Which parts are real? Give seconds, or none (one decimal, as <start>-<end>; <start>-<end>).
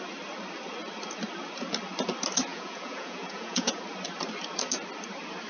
0.0-2.5; 3.8-5.5